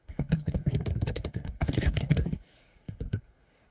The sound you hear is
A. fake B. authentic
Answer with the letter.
A